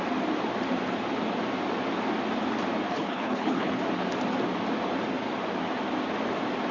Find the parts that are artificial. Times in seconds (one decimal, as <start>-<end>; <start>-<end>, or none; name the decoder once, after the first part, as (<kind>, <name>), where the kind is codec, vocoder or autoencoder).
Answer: 2.9-3.8 (codec, HILCodec)